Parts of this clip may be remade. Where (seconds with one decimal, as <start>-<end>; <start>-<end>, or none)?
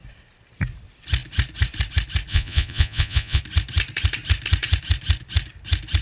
2.3-3.4